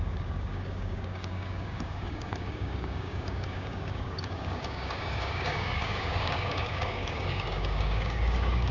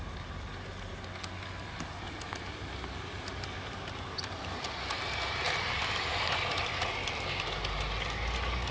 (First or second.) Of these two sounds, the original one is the second